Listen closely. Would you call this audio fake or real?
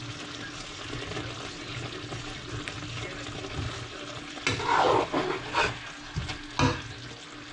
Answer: real